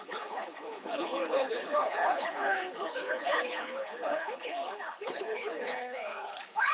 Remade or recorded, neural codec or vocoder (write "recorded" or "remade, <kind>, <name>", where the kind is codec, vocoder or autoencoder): remade, codec, HILCodec